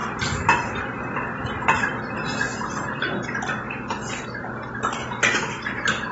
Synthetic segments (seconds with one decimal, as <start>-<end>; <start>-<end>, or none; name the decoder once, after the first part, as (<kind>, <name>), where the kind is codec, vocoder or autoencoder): 0.0-0.8 (vocoder, BigVGAN v2); 2.5-3.2; 5.0-6.1